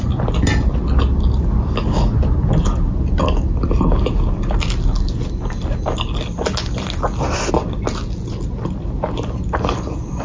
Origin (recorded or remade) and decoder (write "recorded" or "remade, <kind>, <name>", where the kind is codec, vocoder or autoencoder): recorded